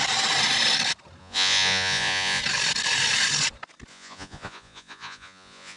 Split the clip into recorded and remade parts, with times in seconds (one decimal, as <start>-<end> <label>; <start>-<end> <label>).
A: 0.0-1.2 recorded; 1.2-2.4 remade; 2.4-3.9 recorded; 3.9-5.8 remade